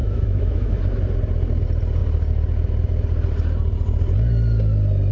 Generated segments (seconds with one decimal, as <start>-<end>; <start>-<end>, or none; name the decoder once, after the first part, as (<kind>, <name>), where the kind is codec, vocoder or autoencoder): 0.0-0.8 (autoencoder, DAC-VAE)